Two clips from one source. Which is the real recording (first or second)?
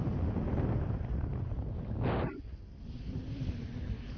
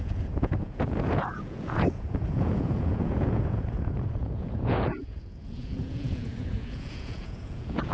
first